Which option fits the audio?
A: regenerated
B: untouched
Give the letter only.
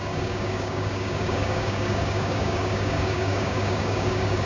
A